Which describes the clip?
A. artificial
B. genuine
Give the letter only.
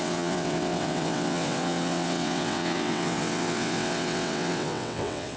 A